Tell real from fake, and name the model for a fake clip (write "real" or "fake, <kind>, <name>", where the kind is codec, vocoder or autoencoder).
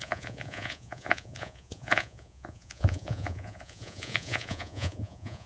fake, vocoder, Vocos